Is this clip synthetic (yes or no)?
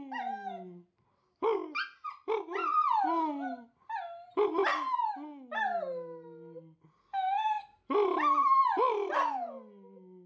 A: no